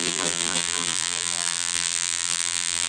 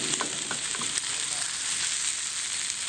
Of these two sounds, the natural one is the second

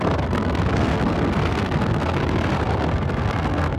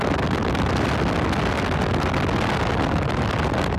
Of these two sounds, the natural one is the second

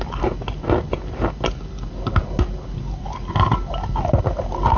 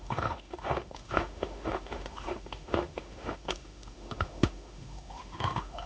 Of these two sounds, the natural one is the first